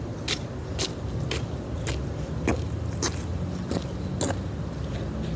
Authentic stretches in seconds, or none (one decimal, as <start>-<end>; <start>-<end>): 0.0-5.4